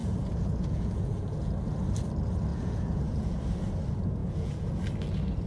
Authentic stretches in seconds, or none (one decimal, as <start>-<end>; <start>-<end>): 1.5-2.5; 3.4-4.2; 4.8-5.5